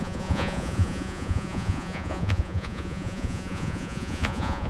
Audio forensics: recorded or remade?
remade